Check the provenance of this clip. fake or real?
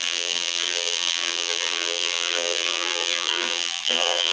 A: fake